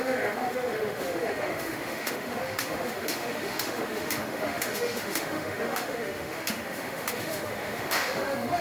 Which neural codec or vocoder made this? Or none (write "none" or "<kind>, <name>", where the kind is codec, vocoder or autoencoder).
autoencoder, DAC-VAE